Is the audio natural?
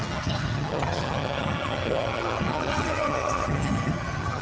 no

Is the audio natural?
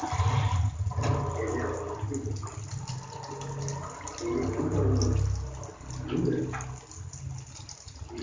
yes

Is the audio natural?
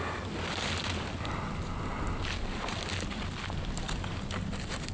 yes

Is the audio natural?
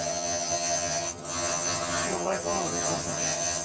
no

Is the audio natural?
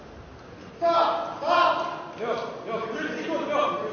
yes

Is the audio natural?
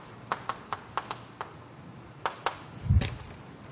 yes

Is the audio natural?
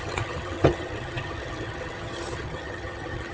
no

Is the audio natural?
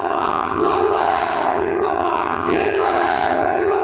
no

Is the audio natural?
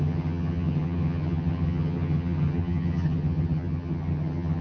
no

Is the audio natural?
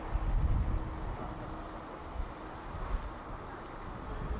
yes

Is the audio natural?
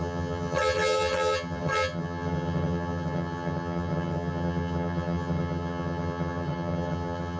no